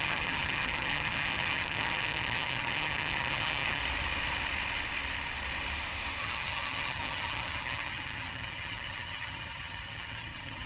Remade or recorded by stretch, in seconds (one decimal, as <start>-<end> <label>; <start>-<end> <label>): 0.0-3.8 remade; 3.8-6.2 recorded; 6.2-10.7 remade